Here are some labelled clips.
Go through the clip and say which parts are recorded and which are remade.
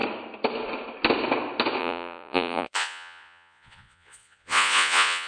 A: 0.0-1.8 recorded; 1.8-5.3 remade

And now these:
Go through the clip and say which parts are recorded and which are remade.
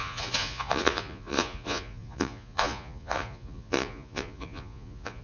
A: 0.0-5.2 remade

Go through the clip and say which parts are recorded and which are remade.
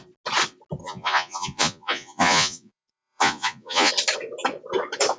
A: 0.0-0.8 recorded; 0.8-3.9 remade; 3.9-5.2 recorded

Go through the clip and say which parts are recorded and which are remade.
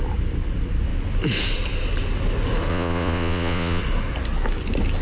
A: 0.0-2.7 recorded; 2.7-3.8 remade; 3.8-5.0 recorded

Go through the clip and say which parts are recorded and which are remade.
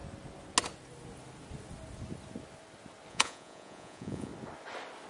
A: 0.0-3.1 recorded; 3.1-4.3 remade; 4.3-5.1 recorded